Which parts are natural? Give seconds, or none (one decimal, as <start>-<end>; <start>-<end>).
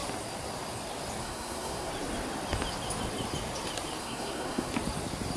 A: 0.0-1.2; 1.9-4.0; 4.7-5.4